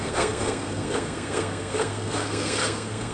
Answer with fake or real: fake